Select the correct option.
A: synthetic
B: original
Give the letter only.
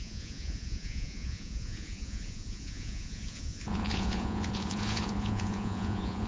A